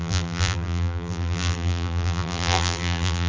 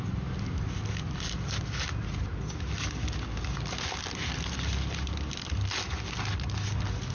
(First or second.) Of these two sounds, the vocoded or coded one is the first